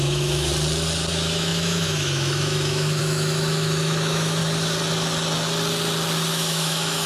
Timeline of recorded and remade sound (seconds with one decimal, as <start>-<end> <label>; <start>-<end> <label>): 0.0-0.5 remade; 0.5-1.1 recorded; 1.1-4.4 remade; 4.4-6.3 recorded; 6.3-7.1 remade